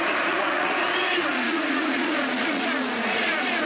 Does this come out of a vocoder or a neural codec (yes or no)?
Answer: yes